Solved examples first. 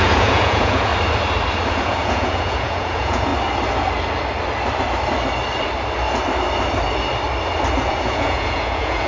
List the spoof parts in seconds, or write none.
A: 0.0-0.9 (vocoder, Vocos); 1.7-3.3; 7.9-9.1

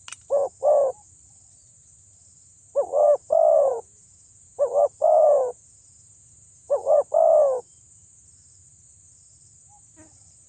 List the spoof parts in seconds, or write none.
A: 3.0-7.1 (vocoder, Vocos)

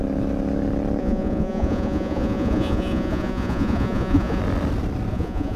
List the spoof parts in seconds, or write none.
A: 1.0-4.4 (vocoder, Vocos); 5.1-5.6

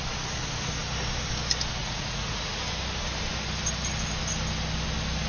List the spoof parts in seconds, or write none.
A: 1.8-2.6 (vocoder, Vocos)